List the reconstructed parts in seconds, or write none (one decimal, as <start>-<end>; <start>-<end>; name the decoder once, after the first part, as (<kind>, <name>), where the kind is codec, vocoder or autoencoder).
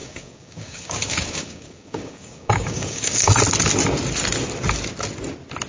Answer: 0.0-3.4 (codec, DAC)